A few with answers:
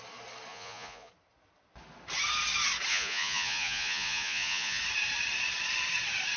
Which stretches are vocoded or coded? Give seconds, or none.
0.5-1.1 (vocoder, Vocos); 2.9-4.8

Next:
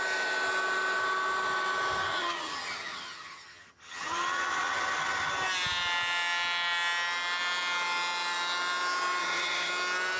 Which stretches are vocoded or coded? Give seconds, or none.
2.0-5.3 (vocoder, HiFi-GAN); 9.2-9.7

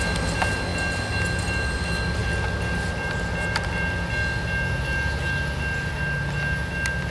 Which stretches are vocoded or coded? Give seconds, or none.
none

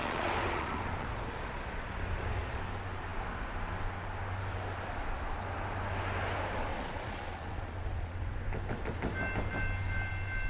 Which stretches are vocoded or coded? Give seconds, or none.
0.0-2.6 (vocoder, Vocos); 6.7-8.4

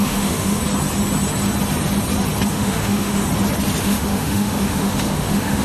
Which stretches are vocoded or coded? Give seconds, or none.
0.0-0.6 (autoencoder, DAC-VAE); 2.5-3.2; 3.8-5.6

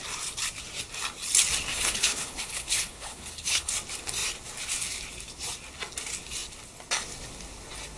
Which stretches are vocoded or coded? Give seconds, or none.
1.7-3.7 (codec, HILCodec)

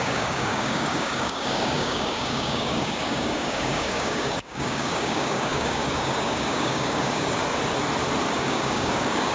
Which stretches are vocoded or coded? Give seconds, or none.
0.0-7.4 (codec, DAC); 8.4-9.3

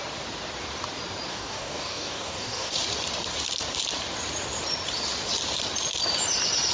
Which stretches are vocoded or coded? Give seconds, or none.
1.3-2.7 (codec, DAC)